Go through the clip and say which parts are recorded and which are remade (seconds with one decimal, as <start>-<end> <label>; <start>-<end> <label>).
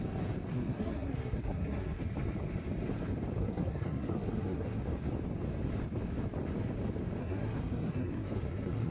0.0-0.5 recorded; 0.5-2.0 remade; 2.0-3.4 recorded; 3.4-4.8 remade; 4.8-7.2 recorded; 7.2-8.9 remade